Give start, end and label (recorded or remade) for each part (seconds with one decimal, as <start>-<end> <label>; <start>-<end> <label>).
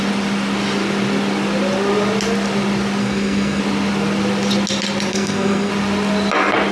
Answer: 0.0-3.0 recorded; 3.0-3.6 remade; 3.6-5.1 recorded; 5.1-5.7 remade; 5.7-6.7 recorded